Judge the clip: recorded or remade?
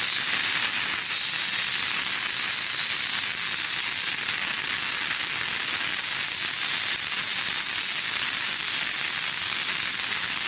recorded